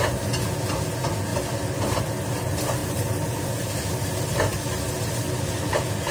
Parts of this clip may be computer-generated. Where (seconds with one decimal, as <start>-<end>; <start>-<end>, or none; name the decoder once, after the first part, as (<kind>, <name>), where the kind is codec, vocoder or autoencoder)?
none